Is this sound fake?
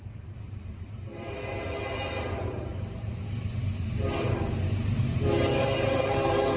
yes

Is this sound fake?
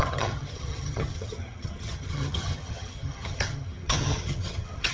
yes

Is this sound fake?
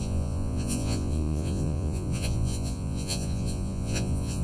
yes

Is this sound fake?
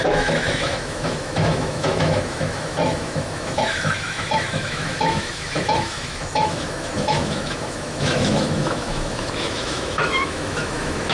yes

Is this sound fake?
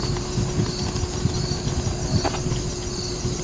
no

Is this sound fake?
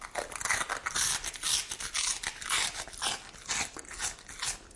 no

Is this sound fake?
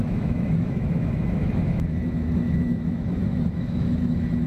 yes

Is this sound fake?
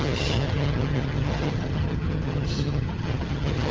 yes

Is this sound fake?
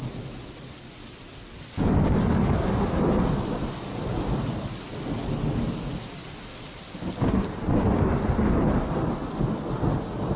no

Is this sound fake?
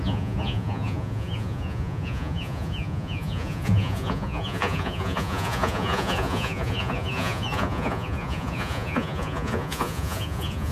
yes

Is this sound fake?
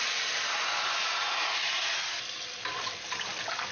no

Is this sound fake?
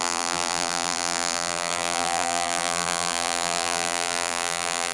yes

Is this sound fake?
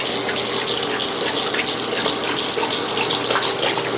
no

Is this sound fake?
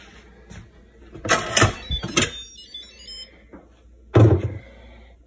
no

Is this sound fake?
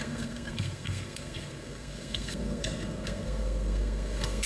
yes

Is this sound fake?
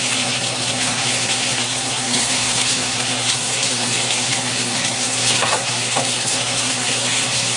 yes